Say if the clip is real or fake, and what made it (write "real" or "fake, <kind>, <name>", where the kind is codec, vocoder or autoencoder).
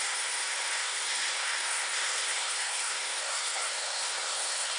fake, codec, SNAC